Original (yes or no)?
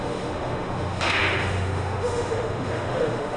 no